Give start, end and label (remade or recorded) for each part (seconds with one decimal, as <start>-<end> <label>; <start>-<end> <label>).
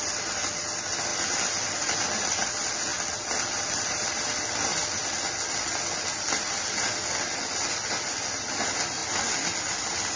0.0-10.2 recorded